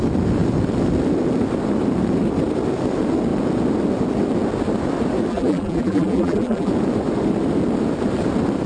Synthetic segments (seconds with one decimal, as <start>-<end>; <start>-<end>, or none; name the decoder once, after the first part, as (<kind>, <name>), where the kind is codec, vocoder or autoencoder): 5.3-6.7 (vocoder, BigVGAN v2)